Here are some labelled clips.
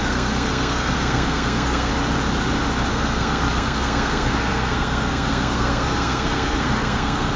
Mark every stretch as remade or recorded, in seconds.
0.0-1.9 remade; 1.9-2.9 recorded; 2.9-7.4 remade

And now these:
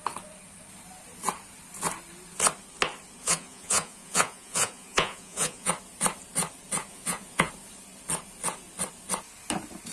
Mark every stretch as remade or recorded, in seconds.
0.0-3.2 recorded; 3.2-5.7 remade; 5.7-6.9 recorded; 6.9-7.5 remade; 7.5-9.9 recorded

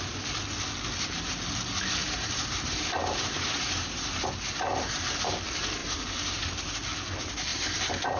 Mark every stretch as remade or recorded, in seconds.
0.0-2.0 recorded; 2.0-4.0 remade; 4.0-5.8 recorded; 5.8-6.4 remade; 6.4-7.5 recorded; 7.5-8.2 remade

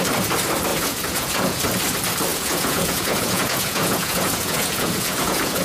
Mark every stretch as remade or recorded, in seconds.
0.0-0.7 recorded; 0.7-1.6 remade; 1.6-2.3 recorded; 2.3-5.6 remade

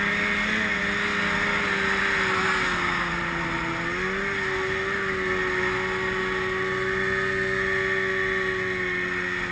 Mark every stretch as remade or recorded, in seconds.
0.0-2.4 recorded; 2.4-3.1 remade; 3.1-9.5 recorded